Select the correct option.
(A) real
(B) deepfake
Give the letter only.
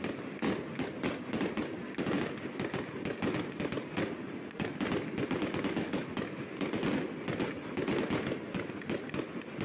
A